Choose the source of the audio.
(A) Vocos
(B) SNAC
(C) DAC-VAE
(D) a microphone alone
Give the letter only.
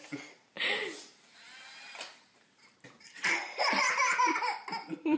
D